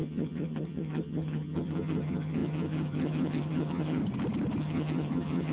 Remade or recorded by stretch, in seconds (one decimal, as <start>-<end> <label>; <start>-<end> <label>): 0.0-4.0 remade; 4.0-4.6 recorded; 4.6-5.5 remade